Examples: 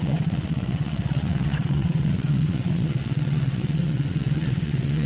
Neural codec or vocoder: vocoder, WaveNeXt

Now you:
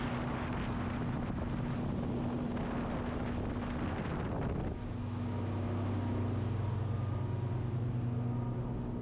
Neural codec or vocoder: none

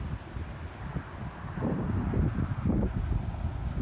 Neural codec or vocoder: none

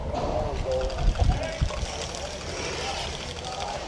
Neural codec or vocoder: none